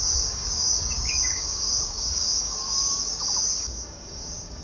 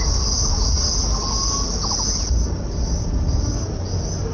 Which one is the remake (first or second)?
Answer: first